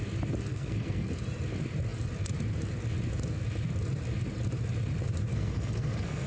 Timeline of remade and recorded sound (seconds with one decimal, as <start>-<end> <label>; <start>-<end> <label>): 0.0-0.5 recorded; 0.5-1.1 remade; 1.1-5.3 recorded; 5.3-6.3 remade